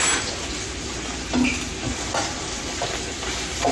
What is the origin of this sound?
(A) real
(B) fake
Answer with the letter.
A